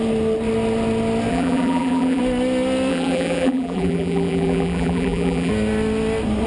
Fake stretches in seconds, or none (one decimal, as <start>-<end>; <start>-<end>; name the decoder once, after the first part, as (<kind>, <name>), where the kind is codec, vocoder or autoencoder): 1.3-2.2 (vocoder, BigVGAN v2); 2.9-5.5